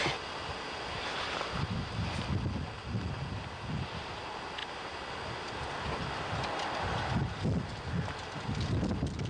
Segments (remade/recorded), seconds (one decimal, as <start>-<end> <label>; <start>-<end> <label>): 0.0-9.3 recorded